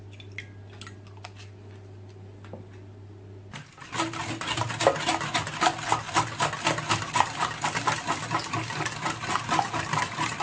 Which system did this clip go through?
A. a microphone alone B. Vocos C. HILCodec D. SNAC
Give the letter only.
A